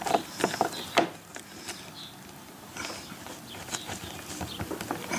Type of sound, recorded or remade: recorded